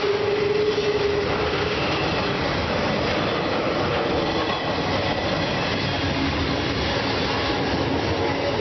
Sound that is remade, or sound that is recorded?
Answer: recorded